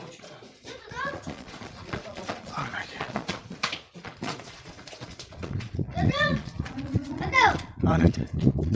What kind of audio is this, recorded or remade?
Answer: remade